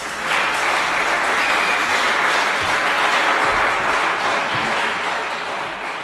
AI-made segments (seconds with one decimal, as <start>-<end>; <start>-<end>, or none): 4.4-5.3